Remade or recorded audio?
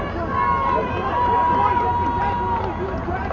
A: recorded